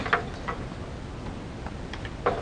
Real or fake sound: real